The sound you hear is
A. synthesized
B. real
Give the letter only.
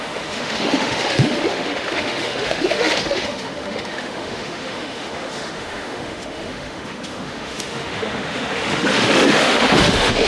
A